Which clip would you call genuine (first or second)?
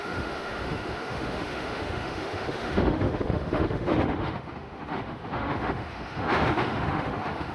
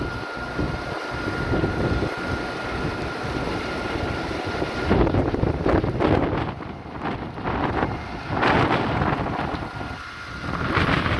second